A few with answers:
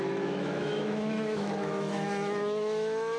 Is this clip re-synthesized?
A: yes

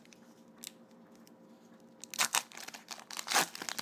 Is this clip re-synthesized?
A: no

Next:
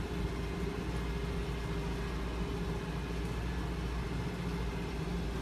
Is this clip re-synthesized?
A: no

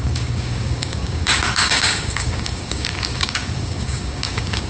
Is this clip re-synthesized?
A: yes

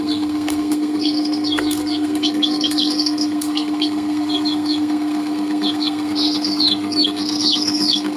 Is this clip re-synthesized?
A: yes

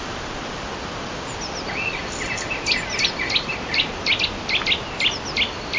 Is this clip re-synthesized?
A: no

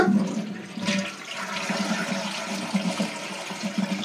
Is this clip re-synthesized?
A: no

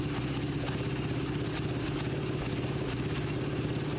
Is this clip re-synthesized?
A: no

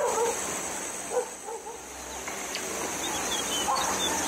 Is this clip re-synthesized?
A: no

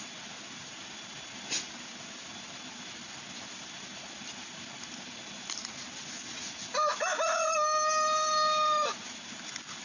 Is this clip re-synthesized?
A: no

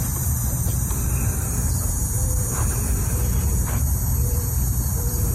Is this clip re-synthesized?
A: yes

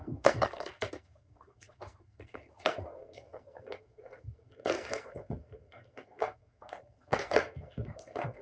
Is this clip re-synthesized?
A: yes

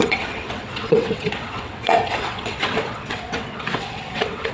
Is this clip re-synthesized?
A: yes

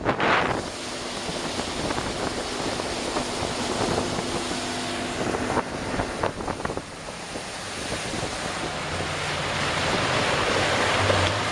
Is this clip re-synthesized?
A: no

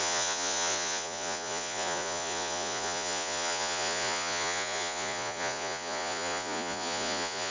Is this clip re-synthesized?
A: yes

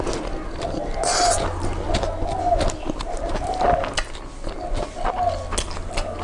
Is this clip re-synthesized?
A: no